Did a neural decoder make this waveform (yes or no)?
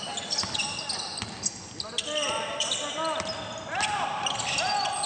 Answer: no